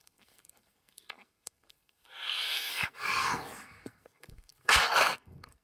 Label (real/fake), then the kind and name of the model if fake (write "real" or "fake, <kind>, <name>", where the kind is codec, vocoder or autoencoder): fake, codec, SNAC